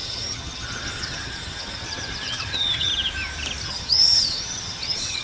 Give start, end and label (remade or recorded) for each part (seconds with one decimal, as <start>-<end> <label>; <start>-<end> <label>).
0.0-2.9 remade; 2.9-3.6 recorded; 3.6-5.2 remade